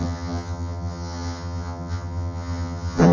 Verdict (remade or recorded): remade